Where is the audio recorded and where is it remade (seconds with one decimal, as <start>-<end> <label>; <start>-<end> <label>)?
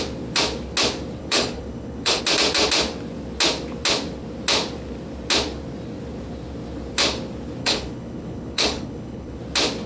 0.0-1.2 recorded; 1.2-2.2 remade; 2.2-7.6 recorded; 7.6-9.4 remade; 9.4-9.9 recorded